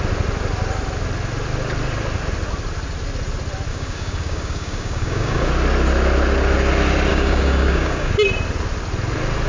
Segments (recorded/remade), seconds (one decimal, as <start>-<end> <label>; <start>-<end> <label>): 0.0-3.7 recorded; 3.7-5.5 remade; 5.5-7.1 recorded; 7.1-8.1 remade; 8.1-9.5 recorded

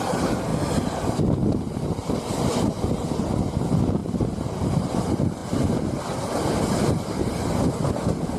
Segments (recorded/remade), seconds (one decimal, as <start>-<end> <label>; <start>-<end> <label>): 0.0-4.0 recorded; 4.0-4.9 remade; 4.9-8.4 recorded